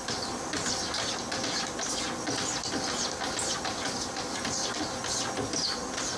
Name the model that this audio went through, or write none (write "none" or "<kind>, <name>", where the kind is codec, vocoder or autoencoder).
none